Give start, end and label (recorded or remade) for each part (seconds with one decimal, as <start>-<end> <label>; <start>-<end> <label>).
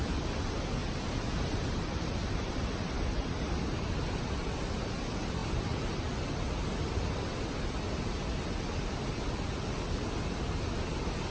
0.0-0.8 recorded; 0.8-4.3 remade; 4.3-5.4 recorded; 5.4-6.0 remade; 6.0-11.3 recorded